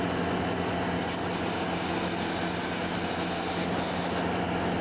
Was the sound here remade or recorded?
recorded